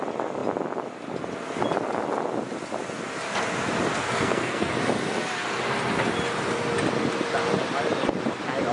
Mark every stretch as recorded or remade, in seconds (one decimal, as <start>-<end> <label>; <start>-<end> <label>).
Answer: 0.0-3.9 recorded; 3.9-4.7 remade; 4.7-8.7 recorded